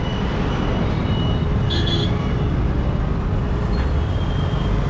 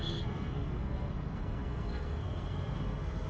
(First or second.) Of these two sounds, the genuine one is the first